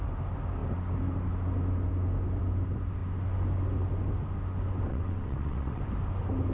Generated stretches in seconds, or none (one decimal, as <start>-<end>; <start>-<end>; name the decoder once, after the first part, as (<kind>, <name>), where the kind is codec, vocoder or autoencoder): 4.9-5.8 (vocoder, WaveNeXt)